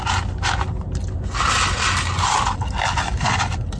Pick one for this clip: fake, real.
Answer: real